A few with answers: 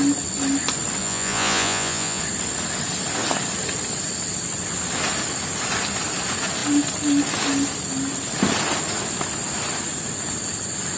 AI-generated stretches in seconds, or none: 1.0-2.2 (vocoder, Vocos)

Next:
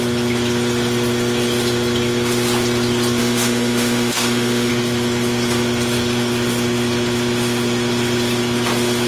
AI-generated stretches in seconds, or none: 3.2-4.7 (autoencoder, DAC-VAE)

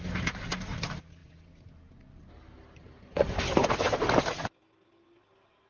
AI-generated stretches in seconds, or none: none

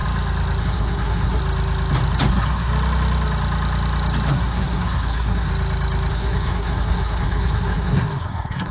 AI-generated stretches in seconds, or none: 0.6-1.4 (codec, SNAC); 2.3-2.7; 4.3-5.5; 6.1-8.7

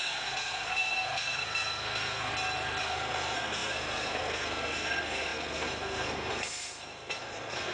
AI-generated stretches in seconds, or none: 0.0-2.3 (codec, SNAC); 2.8-7.7

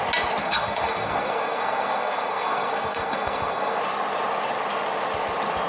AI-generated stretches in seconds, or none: 0.4-3.8 (codec, SNAC)

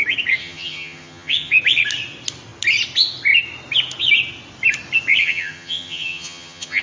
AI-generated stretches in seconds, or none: 0.4-1.5 (vocoder, HiFi-GAN); 5.2-6.8